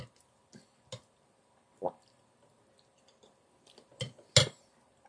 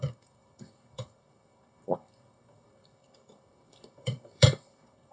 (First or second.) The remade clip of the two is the second